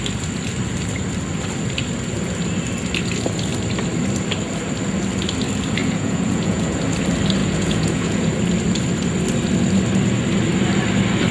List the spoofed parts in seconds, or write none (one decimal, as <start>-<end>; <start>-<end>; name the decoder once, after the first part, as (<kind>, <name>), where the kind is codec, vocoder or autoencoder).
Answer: 5.8-6.8 (vocoder, Vocos); 7.4-8.3